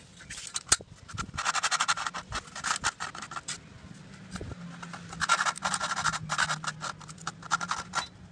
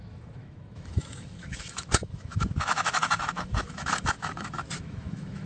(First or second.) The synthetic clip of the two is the second